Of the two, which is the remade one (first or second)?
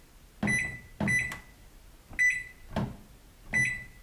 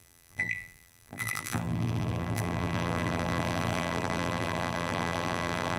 second